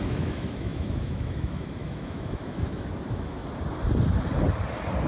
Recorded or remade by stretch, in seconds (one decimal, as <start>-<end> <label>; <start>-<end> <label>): 0.0-3.4 remade; 3.4-5.1 recorded